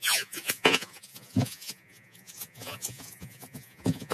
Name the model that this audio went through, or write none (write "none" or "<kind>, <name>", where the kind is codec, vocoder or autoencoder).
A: vocoder, Vocos